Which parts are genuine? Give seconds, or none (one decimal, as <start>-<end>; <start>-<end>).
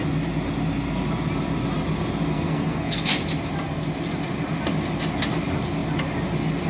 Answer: 0.0-2.3; 3.2-6.7